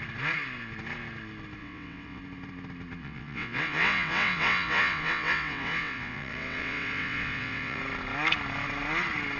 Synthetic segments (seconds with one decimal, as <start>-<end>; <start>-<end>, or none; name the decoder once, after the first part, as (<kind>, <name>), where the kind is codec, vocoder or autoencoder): 1.6-2.2 (vocoder, WaveNeXt); 3.0-7.8